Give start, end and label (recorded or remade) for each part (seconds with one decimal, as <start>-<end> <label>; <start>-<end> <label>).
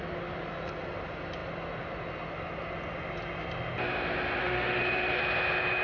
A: 0.0-4.4 recorded; 4.4-5.2 remade; 5.2-5.8 recorded